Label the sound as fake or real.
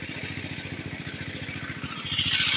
real